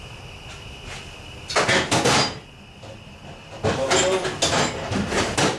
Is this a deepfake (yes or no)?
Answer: no